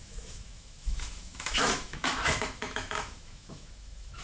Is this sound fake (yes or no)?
yes